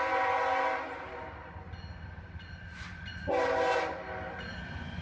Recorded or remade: recorded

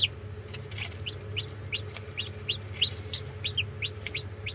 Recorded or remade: recorded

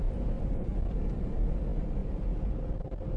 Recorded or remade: recorded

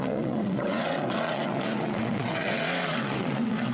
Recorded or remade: remade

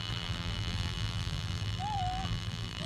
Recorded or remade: remade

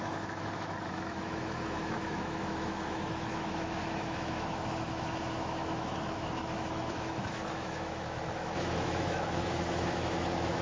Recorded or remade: remade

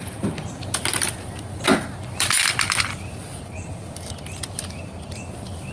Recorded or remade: recorded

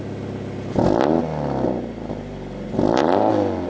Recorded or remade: recorded